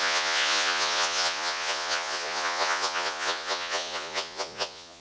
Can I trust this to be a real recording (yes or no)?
no